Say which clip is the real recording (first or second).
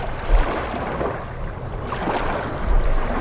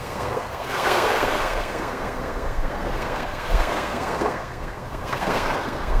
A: first